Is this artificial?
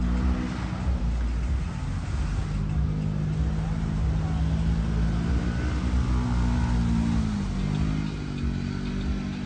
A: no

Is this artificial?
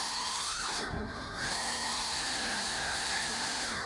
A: yes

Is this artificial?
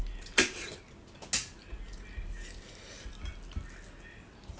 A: no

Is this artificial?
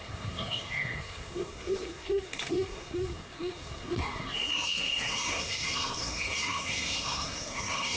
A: yes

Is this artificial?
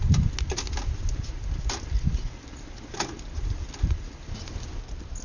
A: no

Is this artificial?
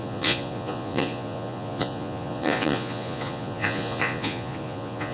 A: yes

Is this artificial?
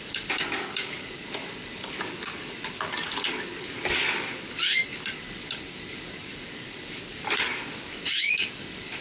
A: yes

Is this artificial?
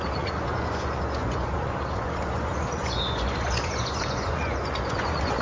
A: yes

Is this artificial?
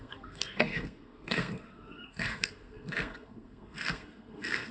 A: yes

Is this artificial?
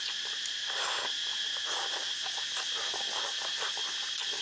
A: no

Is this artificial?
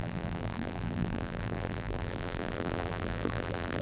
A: yes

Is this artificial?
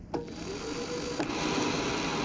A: no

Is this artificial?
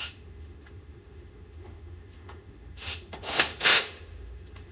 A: yes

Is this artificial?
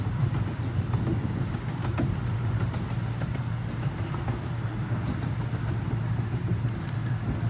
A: no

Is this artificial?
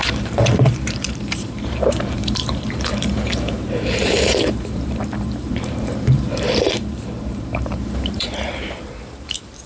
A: yes